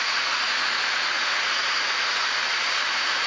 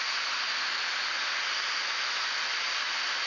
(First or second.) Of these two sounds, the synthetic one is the first